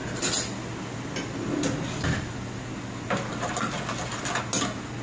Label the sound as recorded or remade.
recorded